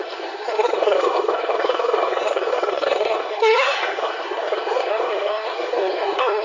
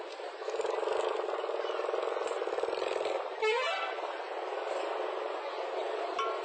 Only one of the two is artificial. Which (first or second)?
first